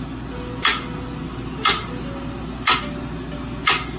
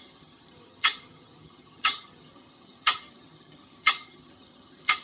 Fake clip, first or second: second